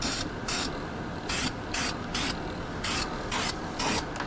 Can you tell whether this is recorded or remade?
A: recorded